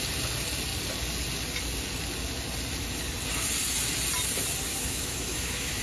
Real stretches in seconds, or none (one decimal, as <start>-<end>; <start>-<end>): 0.0-4.7